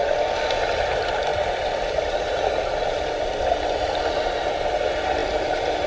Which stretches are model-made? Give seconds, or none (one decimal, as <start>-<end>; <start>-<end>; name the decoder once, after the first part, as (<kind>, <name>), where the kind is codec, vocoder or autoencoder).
none